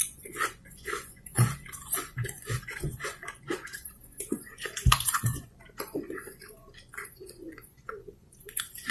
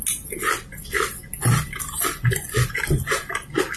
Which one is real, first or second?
second